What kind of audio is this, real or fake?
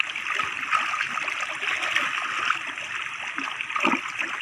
real